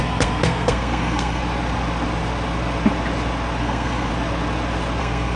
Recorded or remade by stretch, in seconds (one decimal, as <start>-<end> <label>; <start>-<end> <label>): 0.0-1.4 remade; 1.4-3.6 recorded; 3.6-4.1 remade; 4.1-5.0 recorded; 5.0-5.4 remade